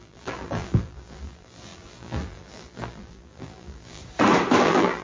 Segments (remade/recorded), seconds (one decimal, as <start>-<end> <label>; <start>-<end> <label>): 0.0-4.0 remade; 4.0-4.6 recorded; 4.6-5.0 remade